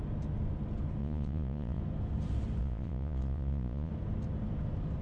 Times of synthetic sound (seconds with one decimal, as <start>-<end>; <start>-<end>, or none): 1.0-1.8; 2.6-3.9